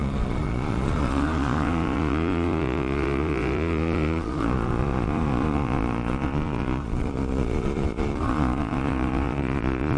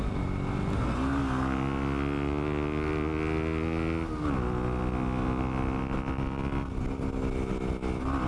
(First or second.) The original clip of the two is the second